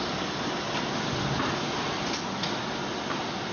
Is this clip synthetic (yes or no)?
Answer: no